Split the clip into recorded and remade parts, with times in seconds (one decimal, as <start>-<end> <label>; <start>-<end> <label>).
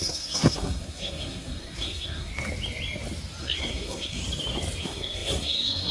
0.0-2.3 remade; 2.3-3.4 recorded; 3.4-4.2 remade; 4.2-4.8 recorded; 4.8-5.9 remade